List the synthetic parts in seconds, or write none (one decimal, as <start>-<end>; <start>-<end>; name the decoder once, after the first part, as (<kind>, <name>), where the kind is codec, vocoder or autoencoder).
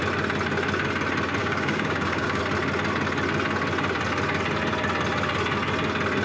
1.4-2.4 (codec, DAC)